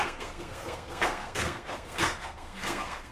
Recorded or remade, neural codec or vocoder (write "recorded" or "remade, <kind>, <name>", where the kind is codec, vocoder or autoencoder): remade, codec, SNAC